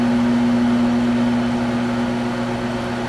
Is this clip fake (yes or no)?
no